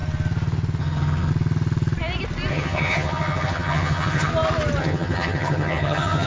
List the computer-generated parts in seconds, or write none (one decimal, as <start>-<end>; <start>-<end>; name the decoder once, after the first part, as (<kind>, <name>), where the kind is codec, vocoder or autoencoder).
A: 0.8-1.3 (vocoder, HiFi-GAN); 2.5-4.3; 4.8-6.3